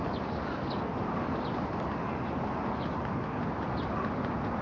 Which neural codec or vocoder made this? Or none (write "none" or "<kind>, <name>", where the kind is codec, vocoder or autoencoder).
none